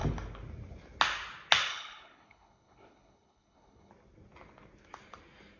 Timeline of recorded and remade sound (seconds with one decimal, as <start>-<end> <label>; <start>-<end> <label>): 0.0-1.7 recorded; 1.7-3.9 remade; 3.9-5.6 recorded